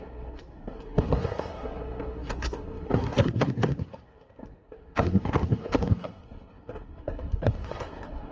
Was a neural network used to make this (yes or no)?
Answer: yes